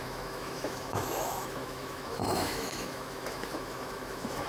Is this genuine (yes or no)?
no